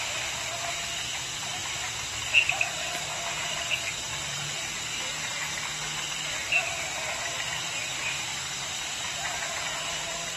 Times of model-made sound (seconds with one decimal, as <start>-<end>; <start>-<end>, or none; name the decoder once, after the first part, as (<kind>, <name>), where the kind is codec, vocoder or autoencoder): 0.0-1.6 (vocoder, BigVGAN v2); 3.4-3.9; 6.4-8.3; 9.6-10.4